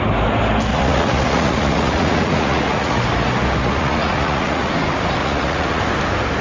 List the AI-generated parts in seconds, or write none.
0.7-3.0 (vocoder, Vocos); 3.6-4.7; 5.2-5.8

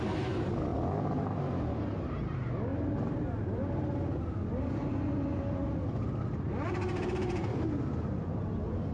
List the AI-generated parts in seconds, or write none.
none